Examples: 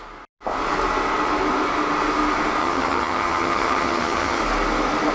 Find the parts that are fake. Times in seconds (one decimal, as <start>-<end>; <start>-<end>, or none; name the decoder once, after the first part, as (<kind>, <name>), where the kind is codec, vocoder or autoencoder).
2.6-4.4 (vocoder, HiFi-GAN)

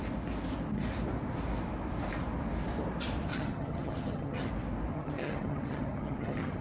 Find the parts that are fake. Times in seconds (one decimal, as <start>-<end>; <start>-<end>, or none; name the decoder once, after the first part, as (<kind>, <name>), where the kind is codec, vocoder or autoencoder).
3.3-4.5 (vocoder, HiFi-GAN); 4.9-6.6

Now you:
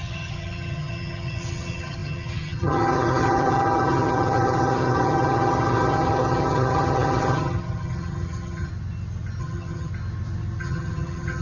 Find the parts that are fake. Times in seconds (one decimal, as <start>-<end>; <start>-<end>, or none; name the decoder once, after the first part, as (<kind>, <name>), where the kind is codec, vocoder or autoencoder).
0.0-8.7 (vocoder, HiFi-GAN); 9.4-9.9; 10.6-11.4

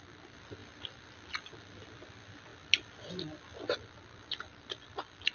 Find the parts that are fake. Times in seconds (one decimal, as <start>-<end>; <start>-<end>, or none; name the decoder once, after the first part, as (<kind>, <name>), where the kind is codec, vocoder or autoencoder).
none

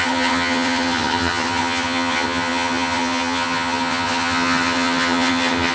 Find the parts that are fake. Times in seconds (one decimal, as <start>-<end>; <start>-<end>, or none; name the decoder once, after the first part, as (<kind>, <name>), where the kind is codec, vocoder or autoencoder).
0.0-5.7 (vocoder, HiFi-GAN)

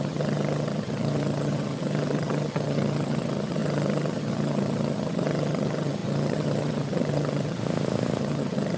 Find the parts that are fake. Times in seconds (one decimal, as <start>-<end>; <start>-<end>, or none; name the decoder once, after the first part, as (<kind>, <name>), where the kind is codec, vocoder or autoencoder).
0.0-7.6 (vocoder, HiFi-GAN); 8.2-8.8

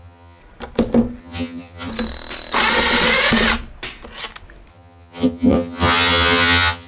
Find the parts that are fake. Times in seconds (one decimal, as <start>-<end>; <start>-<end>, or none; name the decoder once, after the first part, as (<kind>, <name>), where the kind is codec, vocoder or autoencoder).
0.0-0.4 (vocoder, HiFi-GAN); 1.2-1.9; 4.7-6.9

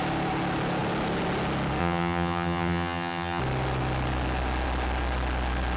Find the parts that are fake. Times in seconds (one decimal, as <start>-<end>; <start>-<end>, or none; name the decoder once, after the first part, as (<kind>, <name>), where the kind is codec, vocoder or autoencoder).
1.8-3.4 (vocoder, HiFi-GAN)